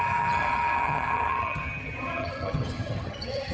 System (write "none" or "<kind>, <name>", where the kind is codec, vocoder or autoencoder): vocoder, HiFi-GAN